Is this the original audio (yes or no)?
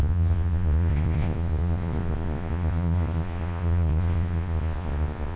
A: no